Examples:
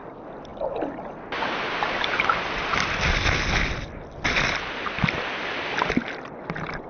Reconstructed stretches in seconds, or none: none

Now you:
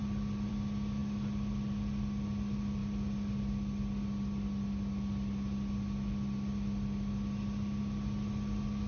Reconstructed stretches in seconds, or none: none